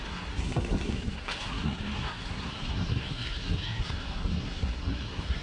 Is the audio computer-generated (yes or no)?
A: yes